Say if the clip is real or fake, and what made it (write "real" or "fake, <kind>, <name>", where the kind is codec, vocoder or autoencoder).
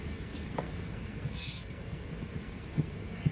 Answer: fake, codec, SNAC